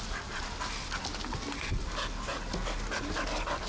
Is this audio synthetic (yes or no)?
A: no